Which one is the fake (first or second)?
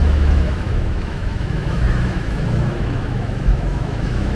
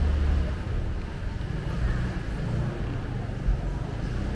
first